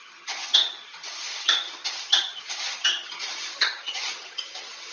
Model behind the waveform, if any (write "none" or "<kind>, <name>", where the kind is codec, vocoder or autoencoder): vocoder, HiFi-GAN